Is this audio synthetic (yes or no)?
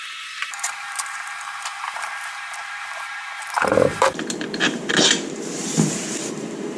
yes